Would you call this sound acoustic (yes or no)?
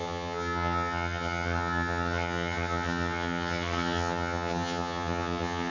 no